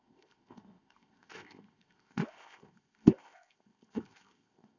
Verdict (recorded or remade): remade